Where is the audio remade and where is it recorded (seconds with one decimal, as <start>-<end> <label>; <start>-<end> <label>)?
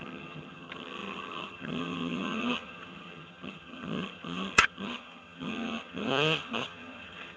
0.0-7.4 remade